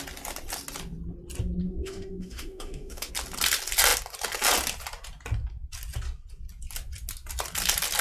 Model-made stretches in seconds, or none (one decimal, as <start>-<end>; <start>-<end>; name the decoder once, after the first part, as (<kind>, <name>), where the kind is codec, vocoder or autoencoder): 1.6-3.1 (autoencoder, DAC-VAE)